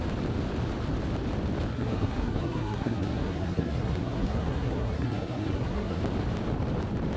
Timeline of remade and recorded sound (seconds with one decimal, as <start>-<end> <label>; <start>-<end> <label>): 0.0-1.7 recorded; 1.7-6.0 remade; 6.0-7.2 recorded